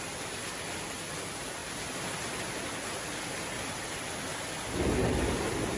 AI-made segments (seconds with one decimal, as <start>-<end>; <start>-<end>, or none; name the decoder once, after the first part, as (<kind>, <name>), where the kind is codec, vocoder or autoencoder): none